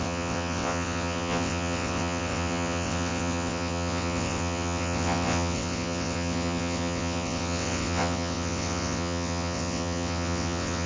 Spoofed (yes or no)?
yes